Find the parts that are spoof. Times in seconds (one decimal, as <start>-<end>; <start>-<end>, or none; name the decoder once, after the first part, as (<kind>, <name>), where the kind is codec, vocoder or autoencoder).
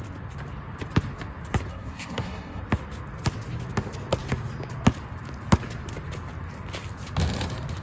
1.7-2.6 (codec, SNAC)